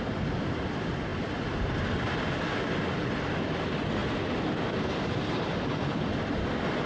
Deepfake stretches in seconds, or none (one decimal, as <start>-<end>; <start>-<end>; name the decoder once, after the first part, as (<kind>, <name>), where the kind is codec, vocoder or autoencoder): none